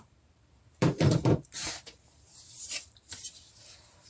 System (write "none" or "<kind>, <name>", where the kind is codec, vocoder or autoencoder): vocoder, BigVGAN v2